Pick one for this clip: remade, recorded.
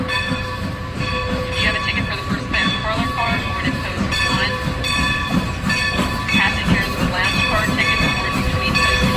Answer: remade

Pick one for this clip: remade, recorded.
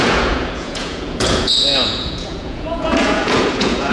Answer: remade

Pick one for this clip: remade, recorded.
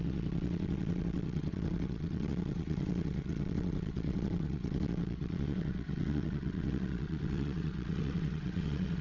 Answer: remade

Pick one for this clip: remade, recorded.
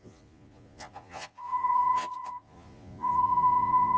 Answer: remade